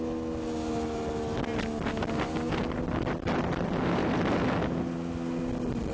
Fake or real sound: real